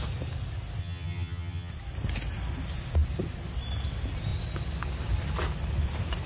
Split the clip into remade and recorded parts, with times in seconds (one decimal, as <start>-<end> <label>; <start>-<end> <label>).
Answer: 0.0-0.8 recorded; 0.8-1.7 remade; 1.7-6.3 recorded